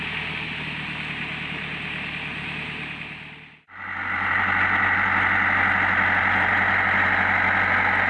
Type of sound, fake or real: real